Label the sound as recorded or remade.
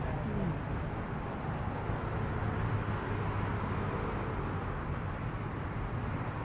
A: recorded